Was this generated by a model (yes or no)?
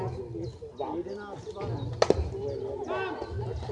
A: no